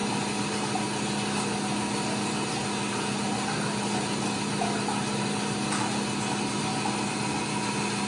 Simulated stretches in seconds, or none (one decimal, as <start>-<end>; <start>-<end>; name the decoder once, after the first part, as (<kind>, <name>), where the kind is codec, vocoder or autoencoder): none